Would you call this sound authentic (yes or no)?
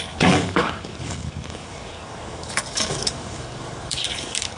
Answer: no